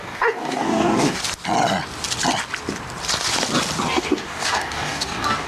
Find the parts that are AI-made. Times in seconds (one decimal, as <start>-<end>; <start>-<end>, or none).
0.0-1.2; 3.9-5.5